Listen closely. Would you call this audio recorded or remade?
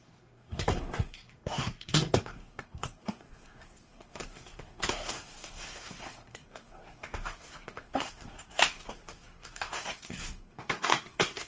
remade